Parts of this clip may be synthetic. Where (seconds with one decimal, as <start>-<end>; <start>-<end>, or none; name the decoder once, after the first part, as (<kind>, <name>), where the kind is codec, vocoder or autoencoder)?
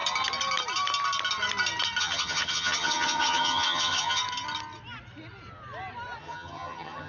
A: 2.0-4.2 (vocoder, HiFi-GAN); 6.2-7.1